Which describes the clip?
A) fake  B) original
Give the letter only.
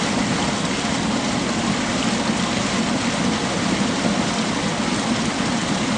B